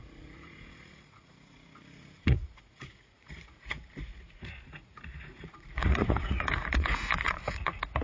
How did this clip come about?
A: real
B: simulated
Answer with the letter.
B